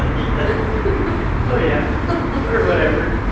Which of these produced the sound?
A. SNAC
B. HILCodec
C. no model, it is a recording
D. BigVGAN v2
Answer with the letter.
C